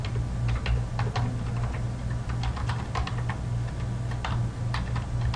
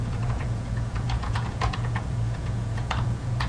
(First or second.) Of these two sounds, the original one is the first